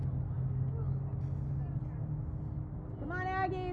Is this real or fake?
real